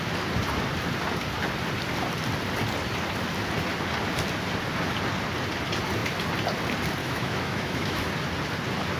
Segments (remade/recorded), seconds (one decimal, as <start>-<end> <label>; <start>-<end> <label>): 0.0-7.0 recorded; 7.0-8.1 remade; 8.1-9.0 recorded